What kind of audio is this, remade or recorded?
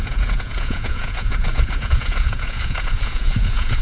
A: remade